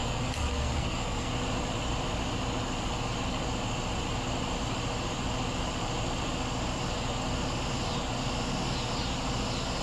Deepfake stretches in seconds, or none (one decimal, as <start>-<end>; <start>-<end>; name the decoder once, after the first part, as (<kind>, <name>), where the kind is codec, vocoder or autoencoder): 0.0-1.3 (codec, SNAC)